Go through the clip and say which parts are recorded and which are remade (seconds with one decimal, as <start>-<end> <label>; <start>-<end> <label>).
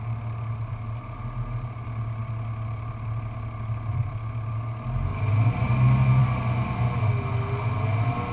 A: 0.0-8.3 recorded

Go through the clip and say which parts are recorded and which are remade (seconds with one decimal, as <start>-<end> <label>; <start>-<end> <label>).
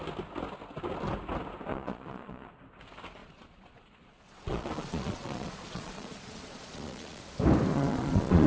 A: 0.0-1.7 recorded; 1.7-2.5 remade; 2.5-3.2 recorded; 3.2-7.2 remade; 7.2-7.7 recorded; 7.7-8.5 remade